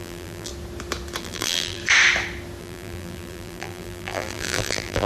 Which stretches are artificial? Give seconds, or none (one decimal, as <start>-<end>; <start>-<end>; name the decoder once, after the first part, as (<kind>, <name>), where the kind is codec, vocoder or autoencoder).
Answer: 0.0-0.5 (vocoder, BigVGAN v2); 1.2-1.8; 2.6-5.1